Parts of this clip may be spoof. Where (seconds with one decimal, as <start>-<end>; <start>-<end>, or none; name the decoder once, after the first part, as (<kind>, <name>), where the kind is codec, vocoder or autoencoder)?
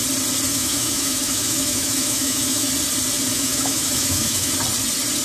0.5-2.7 (autoencoder, DAC-VAE); 3.3-4.5